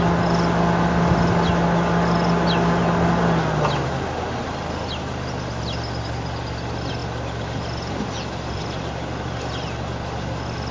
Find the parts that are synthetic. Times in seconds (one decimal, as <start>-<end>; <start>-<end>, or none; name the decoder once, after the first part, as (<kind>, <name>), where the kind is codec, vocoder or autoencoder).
none